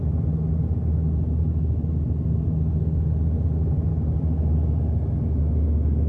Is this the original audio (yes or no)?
yes